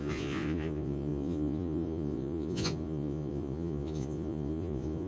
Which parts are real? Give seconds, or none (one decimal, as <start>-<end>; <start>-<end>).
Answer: none